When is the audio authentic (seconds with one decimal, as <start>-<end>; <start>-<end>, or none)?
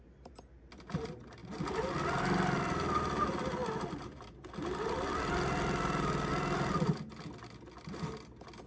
0.0-8.7